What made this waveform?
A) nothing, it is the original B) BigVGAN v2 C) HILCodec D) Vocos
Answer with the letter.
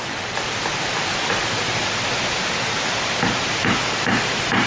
A